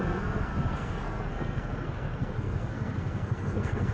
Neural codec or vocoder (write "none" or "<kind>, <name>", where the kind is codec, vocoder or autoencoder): codec, SNAC